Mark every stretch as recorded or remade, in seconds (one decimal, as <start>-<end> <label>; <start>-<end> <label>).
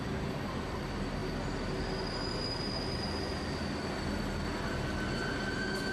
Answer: 0.0-5.9 recorded